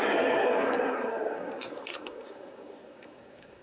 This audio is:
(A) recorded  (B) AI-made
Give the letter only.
B